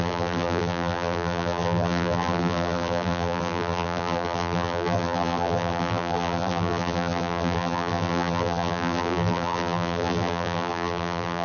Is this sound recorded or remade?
remade